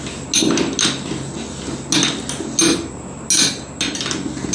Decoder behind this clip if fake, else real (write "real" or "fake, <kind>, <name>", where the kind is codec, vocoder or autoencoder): real